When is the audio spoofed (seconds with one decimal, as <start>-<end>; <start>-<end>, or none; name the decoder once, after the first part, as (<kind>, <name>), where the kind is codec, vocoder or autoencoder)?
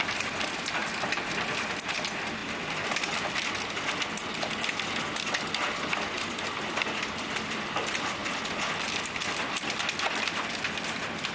none